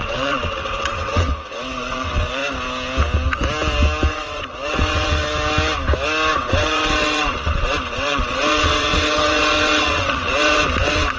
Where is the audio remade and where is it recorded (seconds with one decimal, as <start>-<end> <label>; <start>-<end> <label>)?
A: 0.0-2.4 remade; 2.4-4.1 recorded; 4.1-5.2 remade; 5.2-6.4 recorded; 6.4-11.2 remade